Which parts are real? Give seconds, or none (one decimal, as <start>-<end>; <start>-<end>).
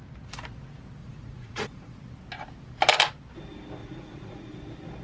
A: 0.0-1.0; 2.0-3.8; 4.6-5.0